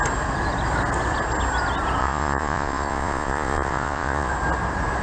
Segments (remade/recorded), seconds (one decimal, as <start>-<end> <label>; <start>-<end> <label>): 0.0-2.0 recorded; 2.0-4.3 remade; 4.3-5.0 recorded